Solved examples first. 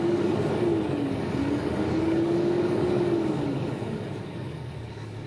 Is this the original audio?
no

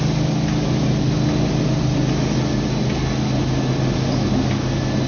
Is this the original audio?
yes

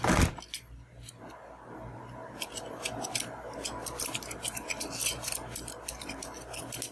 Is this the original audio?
yes